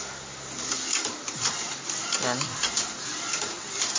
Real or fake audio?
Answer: fake